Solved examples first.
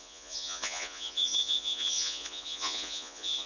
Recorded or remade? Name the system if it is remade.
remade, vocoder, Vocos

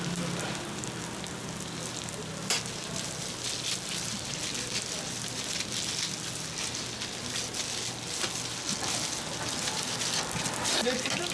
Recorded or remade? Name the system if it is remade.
recorded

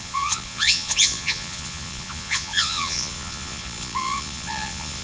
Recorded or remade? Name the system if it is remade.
remade, vocoder, Vocos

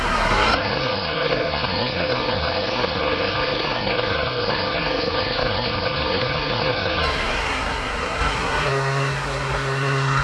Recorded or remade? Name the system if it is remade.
remade, codec, SNAC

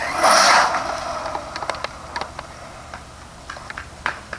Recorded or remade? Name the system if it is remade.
recorded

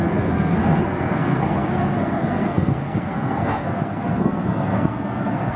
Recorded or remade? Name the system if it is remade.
remade, codec, SNAC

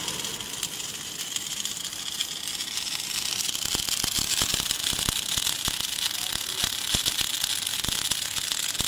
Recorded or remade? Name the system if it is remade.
recorded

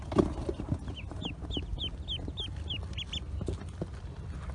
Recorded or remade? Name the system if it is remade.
recorded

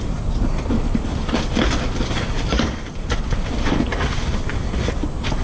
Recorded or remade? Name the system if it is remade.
recorded